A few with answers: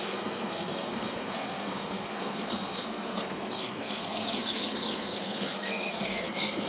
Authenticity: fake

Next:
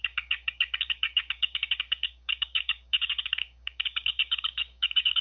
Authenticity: fake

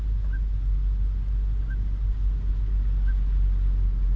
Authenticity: real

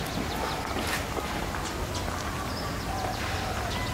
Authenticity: real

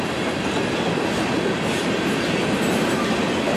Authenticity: real